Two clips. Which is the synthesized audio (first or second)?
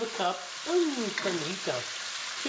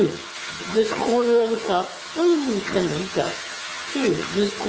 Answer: second